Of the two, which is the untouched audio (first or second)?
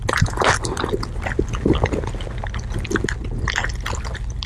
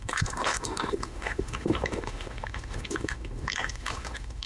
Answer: first